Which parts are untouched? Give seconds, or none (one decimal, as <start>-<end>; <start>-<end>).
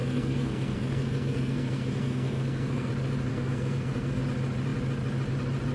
2.9-3.3; 4.2-5.7